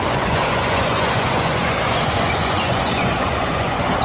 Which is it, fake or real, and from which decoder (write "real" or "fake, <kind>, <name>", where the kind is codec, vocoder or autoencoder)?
fake, vocoder, Vocos